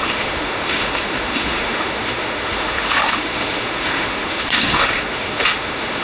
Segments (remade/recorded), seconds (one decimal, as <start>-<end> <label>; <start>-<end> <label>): 0.0-6.0 remade